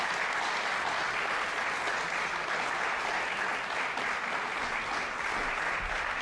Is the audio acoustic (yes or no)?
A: yes